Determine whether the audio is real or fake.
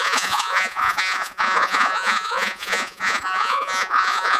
fake